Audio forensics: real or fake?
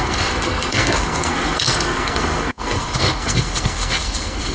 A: fake